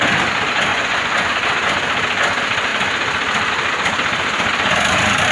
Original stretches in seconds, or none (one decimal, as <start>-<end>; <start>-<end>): 0.0-0.7; 1.3-5.3